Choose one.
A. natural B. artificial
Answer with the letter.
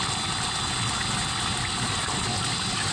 A